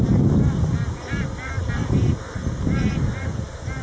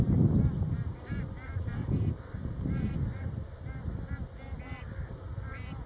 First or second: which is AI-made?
second